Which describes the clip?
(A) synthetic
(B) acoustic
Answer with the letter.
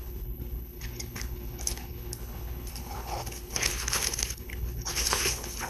A